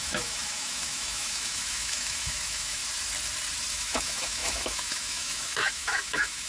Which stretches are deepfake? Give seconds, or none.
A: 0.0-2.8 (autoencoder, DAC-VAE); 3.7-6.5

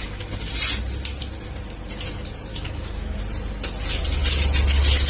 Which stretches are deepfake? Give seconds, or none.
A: 2.5-3.2 (autoencoder, DAC-VAE)

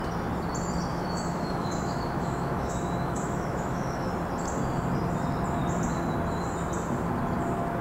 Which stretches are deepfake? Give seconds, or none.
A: 0.9-4.1 (autoencoder, DAC-VAE)

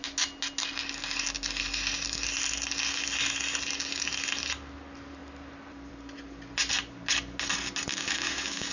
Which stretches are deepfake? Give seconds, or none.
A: 7.9-8.7 (autoencoder, DAC-VAE)

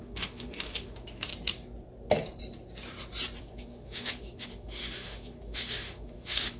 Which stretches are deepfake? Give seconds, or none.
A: 0.0-1.3 (autoencoder, DAC-VAE); 3.4-6.6

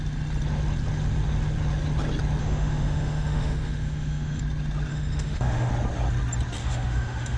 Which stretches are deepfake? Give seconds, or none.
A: 2.4-4.4 (autoencoder, DAC-VAE); 4.9-5.7; 6.6-7.4

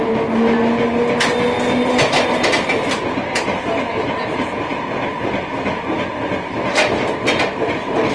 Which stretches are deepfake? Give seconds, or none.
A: none

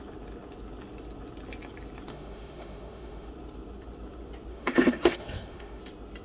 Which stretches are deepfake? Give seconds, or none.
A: 2.1-3.3 (autoencoder, DAC-VAE); 4.5-5.8